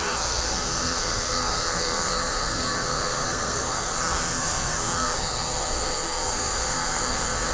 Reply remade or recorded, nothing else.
remade